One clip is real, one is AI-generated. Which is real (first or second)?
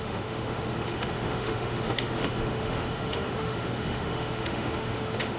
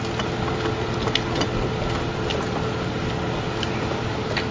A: second